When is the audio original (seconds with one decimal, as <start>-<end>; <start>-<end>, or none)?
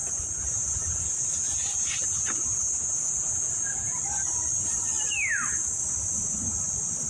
4.0-7.1